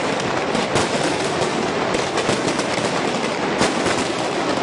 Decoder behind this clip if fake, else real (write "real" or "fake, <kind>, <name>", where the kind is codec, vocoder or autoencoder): real